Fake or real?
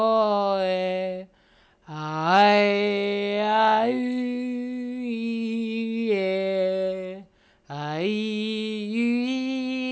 real